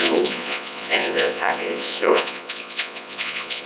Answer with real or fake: fake